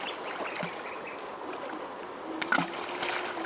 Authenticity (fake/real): real